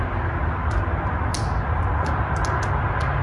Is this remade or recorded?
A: recorded